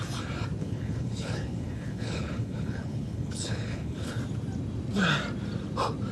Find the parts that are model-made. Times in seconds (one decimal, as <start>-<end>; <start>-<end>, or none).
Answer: 0.6-4.2